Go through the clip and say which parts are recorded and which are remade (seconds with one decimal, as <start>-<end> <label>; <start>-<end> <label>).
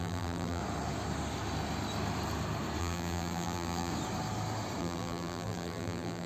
0.0-0.6 remade; 0.6-2.8 recorded; 2.8-3.9 remade; 3.9-4.8 recorded; 4.8-6.3 remade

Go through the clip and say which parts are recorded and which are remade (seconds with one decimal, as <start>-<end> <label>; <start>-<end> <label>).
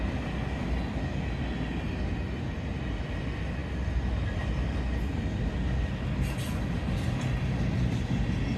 0.0-8.6 recorded